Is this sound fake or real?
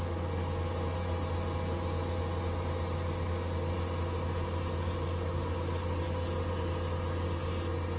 real